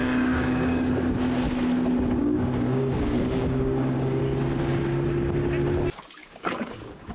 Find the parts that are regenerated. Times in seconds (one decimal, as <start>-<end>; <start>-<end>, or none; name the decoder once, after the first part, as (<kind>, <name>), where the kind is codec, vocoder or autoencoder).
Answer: 0.0-0.9 (codec, DAC); 2.2-4.2; 6.2-7.1